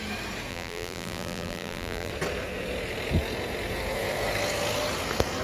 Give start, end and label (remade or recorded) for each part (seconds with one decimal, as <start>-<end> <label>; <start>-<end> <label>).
0.0-0.5 recorded; 0.5-2.1 remade; 2.1-5.4 recorded